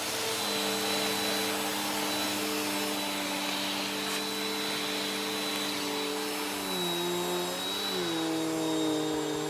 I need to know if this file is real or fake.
real